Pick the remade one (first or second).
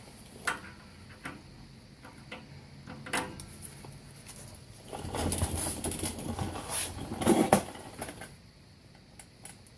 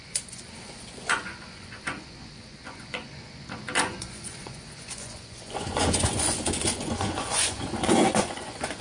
second